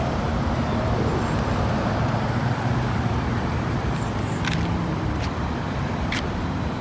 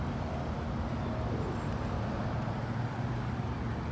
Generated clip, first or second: first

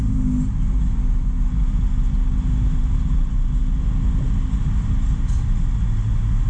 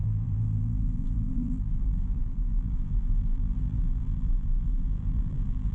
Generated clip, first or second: second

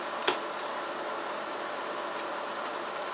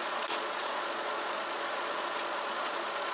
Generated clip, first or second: second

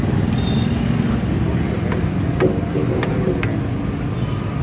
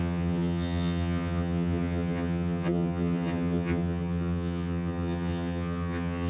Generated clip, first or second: second